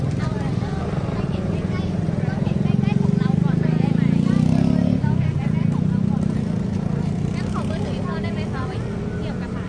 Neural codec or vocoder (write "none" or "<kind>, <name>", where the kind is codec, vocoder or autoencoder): none